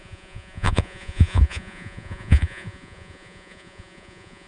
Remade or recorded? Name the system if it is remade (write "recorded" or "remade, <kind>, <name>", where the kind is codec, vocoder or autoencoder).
remade, vocoder, Vocos